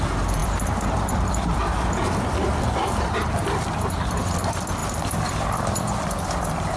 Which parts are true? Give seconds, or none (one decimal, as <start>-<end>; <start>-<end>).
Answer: 0.0-0.4; 4.2-4.8